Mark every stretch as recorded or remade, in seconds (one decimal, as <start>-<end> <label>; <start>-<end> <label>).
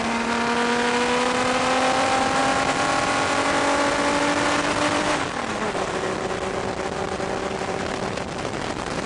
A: 0.0-2.4 remade; 2.4-3.9 recorded; 3.9-9.1 remade